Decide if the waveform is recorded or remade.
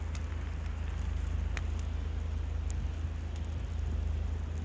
recorded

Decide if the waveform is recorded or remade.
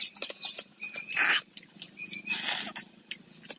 recorded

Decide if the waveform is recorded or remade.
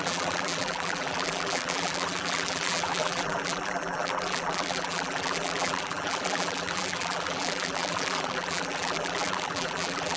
remade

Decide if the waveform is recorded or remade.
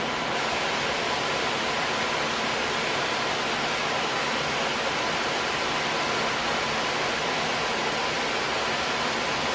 recorded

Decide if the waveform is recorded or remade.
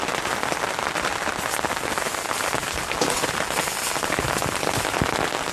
recorded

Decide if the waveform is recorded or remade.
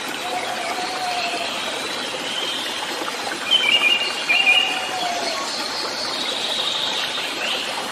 remade